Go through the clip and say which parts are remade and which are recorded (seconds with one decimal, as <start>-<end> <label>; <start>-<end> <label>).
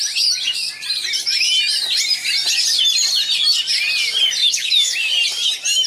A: 0.0-4.4 recorded; 4.4-5.1 remade; 5.1-5.9 recorded